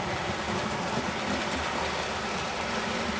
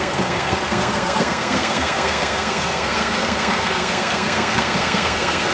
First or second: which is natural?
first